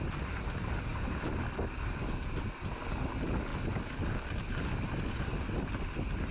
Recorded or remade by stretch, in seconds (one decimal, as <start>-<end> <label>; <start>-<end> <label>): 0.0-6.3 recorded